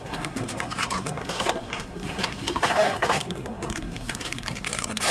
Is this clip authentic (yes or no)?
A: no